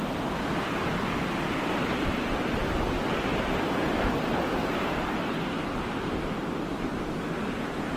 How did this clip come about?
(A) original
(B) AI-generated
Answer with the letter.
A